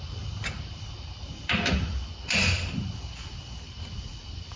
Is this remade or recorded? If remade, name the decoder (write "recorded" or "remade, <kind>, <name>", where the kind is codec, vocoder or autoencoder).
recorded